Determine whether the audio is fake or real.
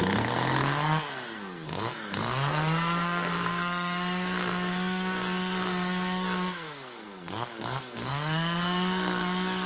fake